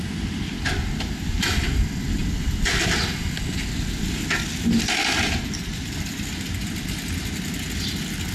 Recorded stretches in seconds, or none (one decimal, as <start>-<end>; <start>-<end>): 0.0-8.3